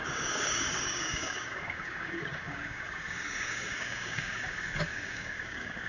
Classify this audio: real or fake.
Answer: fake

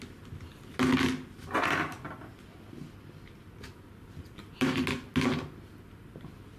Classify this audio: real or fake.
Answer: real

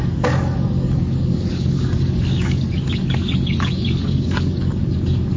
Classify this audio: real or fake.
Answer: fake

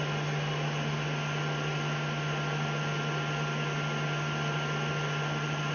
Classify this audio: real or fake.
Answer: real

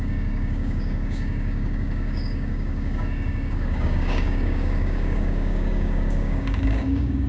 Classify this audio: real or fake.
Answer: fake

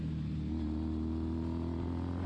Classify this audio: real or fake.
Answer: real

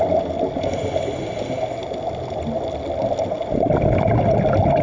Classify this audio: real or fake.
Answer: real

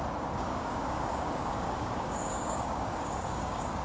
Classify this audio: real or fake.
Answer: fake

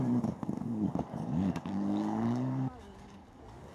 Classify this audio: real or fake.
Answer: fake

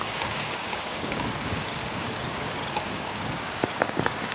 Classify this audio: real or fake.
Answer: fake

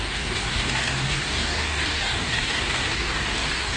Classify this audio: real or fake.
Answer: fake